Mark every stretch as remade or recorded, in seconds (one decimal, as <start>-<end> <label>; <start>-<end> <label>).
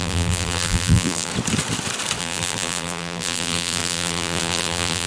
0.0-1.3 remade; 1.3-2.2 recorded; 2.2-5.1 remade